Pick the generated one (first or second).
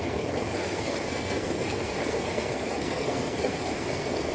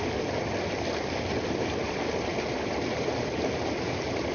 first